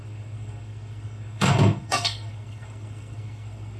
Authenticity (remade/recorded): remade